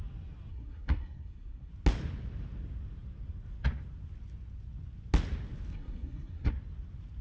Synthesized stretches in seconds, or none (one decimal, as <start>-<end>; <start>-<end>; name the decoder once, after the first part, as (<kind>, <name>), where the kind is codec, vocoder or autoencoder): 0.5-1.7 (codec, SNAC); 5.7-6.5